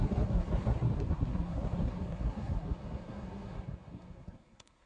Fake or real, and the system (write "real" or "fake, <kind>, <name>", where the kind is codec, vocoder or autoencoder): fake, codec, SNAC